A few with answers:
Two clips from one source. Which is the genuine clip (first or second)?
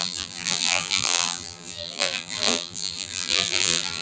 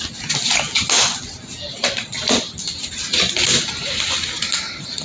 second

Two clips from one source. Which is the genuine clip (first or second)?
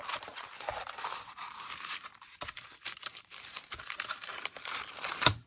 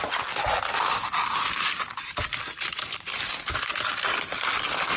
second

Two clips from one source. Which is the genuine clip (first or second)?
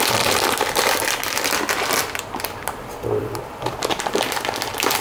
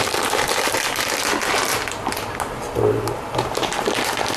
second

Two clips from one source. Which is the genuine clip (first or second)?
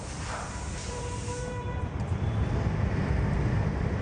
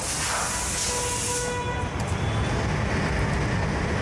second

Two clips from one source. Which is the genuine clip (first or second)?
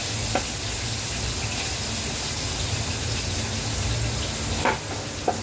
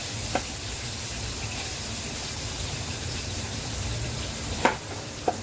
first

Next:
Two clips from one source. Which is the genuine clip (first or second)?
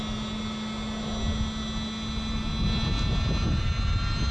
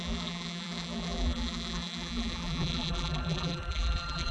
first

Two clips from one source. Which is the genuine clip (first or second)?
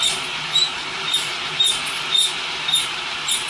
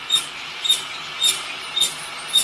second